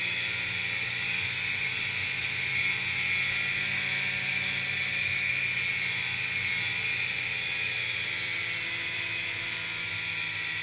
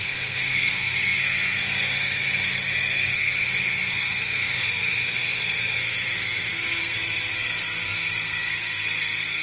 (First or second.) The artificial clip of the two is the second